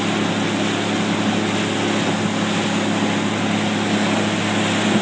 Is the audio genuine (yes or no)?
yes